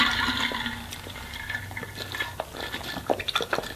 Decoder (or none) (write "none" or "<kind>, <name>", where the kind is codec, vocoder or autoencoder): none